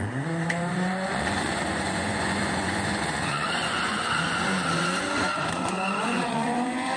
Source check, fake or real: fake